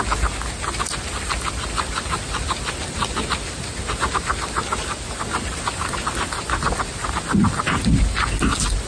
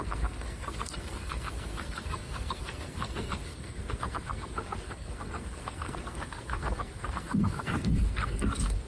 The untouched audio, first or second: first